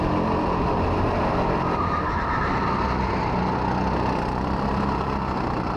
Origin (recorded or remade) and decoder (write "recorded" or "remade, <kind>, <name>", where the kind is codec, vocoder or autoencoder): recorded